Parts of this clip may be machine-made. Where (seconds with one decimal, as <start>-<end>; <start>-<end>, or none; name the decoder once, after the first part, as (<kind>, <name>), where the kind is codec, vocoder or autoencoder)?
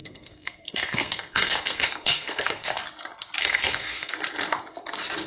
0.0-2.8 (codec, SNAC); 3.4-4.1